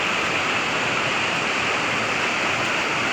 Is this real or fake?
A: real